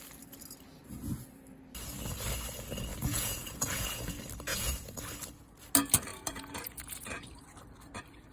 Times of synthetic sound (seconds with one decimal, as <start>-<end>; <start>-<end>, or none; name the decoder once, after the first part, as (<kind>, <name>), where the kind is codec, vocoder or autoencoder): 2.9-4.1 (vocoder, Vocos); 4.5-5.0; 6.1-7.3